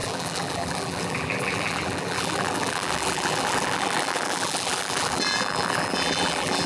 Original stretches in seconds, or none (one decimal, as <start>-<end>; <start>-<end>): none